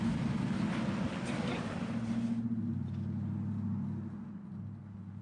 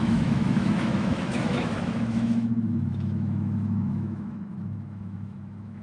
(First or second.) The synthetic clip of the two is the second